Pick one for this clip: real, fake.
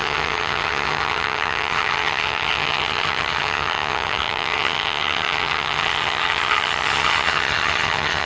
fake